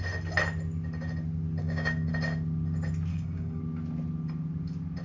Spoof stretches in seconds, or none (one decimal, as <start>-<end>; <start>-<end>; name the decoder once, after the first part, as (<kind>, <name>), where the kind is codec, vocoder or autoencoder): 1.6-2.1 (codec, DAC); 3.1-3.6